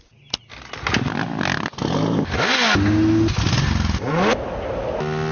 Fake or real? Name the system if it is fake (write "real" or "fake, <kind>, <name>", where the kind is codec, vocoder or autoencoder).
real